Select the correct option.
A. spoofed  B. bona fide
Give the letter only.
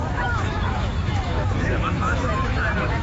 A